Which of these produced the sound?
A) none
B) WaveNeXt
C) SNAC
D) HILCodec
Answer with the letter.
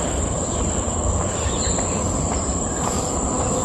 A